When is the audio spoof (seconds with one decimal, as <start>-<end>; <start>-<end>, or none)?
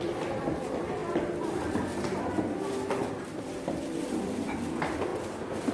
0.0-5.7